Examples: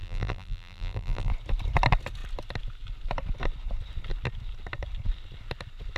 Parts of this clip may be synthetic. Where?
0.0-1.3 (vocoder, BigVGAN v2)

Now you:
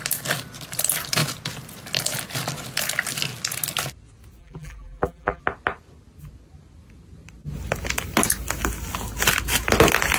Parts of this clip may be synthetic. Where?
4.4-5.4 (vocoder, BigVGAN v2)